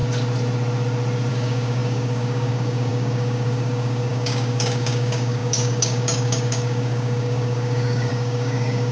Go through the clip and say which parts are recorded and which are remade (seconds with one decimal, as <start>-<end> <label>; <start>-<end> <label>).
0.0-1.3 recorded; 1.3-8.9 remade